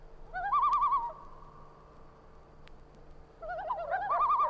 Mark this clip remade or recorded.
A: recorded